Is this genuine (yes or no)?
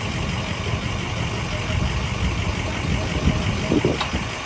yes